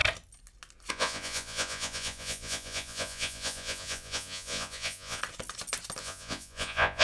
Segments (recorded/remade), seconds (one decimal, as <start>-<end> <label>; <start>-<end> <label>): 0.0-0.9 recorded; 0.9-5.2 remade; 5.2-6.0 recorded; 6.0-7.0 remade